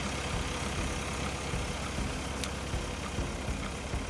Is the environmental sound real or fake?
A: real